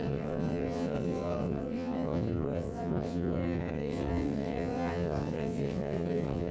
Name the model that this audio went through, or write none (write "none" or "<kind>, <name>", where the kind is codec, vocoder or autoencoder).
vocoder, WaveNeXt